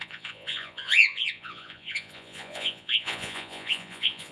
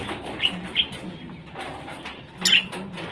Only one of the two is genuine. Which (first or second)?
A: second